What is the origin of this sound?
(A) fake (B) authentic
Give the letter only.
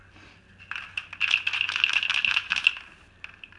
B